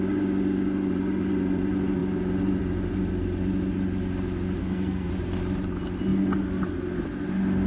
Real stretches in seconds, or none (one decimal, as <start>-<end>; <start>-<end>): 0.0-4.6; 5.1-7.7